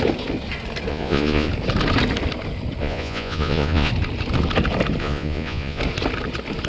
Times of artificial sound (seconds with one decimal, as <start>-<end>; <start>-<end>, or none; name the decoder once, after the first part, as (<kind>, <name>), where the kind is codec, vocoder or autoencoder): 0.9-1.5 (vocoder, Vocos); 2.8-3.9; 5.0-5.8